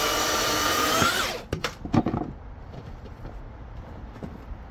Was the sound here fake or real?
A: fake